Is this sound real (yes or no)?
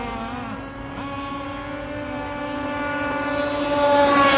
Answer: yes